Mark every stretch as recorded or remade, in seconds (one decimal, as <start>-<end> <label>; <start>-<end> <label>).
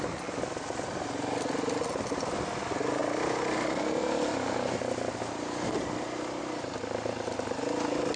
0.0-8.2 recorded